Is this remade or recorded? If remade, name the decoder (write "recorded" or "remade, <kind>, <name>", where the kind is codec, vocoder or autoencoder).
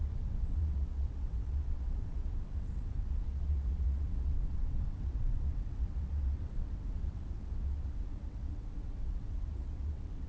remade, vocoder, WaveNeXt